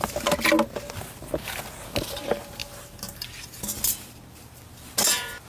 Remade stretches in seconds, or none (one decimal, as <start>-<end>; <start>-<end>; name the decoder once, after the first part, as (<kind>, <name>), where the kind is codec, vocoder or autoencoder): none